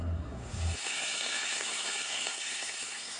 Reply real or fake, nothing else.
fake